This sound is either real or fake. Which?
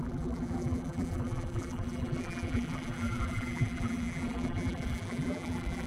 fake